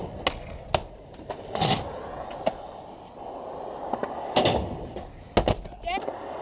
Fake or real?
real